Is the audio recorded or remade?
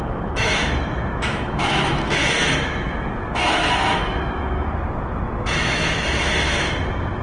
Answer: remade